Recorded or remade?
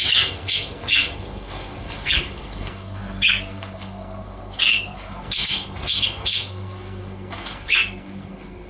remade